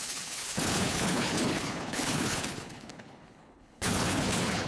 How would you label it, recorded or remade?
remade